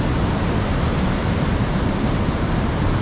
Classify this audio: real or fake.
real